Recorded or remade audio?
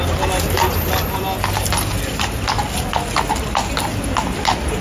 recorded